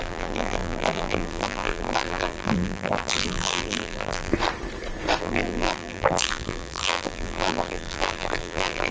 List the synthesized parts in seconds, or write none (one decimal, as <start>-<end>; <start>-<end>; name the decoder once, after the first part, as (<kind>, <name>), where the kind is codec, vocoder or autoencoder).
0.0-4.3 (vocoder, BigVGAN v2); 5.2-8.9